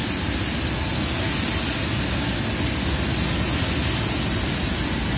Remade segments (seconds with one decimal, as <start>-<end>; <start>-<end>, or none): none